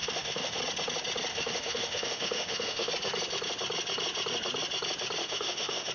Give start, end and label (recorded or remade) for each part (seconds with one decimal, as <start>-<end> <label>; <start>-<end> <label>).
0.0-0.6 remade; 0.6-1.3 recorded; 1.3-2.9 remade; 2.9-5.2 recorded; 5.2-5.9 remade